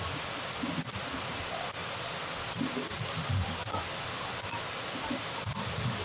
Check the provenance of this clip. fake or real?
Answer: real